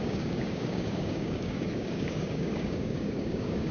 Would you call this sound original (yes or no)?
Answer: no